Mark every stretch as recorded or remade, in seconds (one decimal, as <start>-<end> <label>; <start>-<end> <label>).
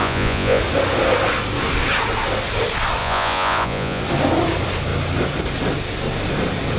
0.0-0.6 remade; 0.6-3.0 recorded; 3.0-4.0 remade; 4.0-6.8 recorded